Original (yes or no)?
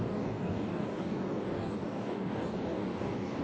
no